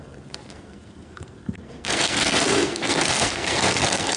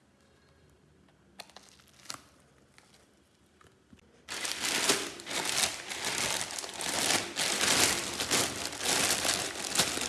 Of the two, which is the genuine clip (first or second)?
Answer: second